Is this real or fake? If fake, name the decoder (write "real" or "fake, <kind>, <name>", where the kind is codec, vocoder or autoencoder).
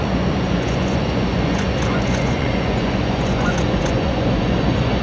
fake, vocoder, Vocos